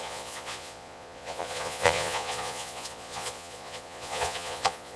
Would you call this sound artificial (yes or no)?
yes